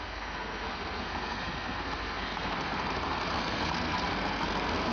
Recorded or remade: remade